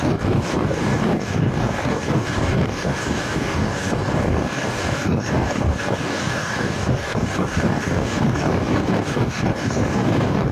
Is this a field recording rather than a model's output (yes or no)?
no